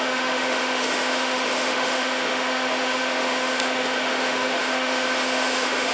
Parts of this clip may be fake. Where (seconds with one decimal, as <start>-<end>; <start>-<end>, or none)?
0.0-5.9